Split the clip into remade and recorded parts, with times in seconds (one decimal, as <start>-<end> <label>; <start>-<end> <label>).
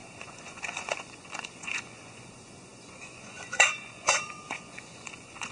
0.0-5.5 remade